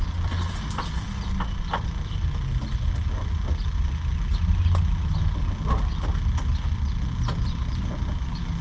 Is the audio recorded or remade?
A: recorded